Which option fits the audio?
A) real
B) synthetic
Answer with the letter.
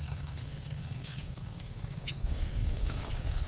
B